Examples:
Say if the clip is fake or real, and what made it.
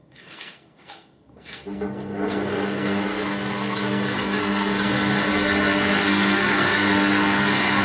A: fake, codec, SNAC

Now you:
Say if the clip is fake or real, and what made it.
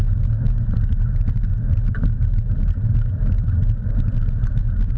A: real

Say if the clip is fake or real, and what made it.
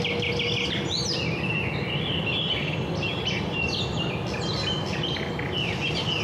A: real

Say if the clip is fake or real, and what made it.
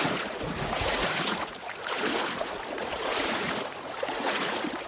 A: fake, vocoder, Vocos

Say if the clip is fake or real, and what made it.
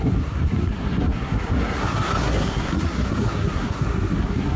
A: fake, codec, SNAC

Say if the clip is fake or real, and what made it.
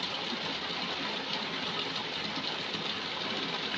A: real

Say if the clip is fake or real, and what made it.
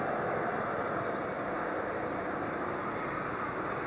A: real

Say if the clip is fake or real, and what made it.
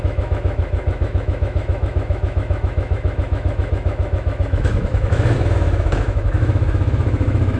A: fake, autoencoder, DAC-VAE